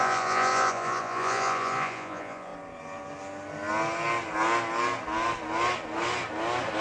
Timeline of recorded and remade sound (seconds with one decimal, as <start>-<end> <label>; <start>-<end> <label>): 0.0-2.5 remade; 2.5-6.8 recorded